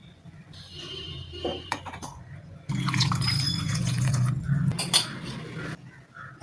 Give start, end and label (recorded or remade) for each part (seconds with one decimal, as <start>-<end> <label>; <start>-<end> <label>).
0.0-0.9 remade; 0.9-1.5 recorded; 1.5-4.4 remade; 4.4-6.4 recorded

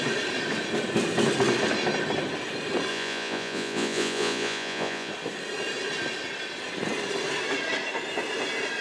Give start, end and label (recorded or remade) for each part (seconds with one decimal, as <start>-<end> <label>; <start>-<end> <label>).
0.0-2.9 recorded; 2.9-5.1 remade; 5.1-8.8 recorded